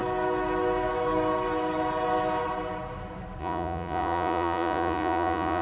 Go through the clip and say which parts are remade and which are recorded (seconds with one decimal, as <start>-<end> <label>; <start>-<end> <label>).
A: 0.0-3.4 recorded; 3.4-5.6 remade